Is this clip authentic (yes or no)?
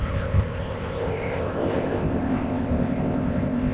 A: no